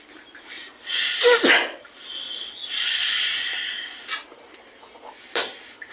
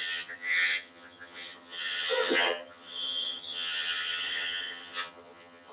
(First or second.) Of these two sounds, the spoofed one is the second